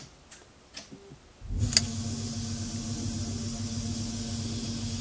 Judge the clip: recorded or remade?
recorded